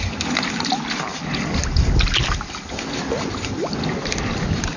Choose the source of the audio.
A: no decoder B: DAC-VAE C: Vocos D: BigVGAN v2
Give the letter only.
A